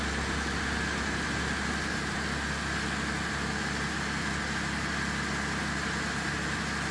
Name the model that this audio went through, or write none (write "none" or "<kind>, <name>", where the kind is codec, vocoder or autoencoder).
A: none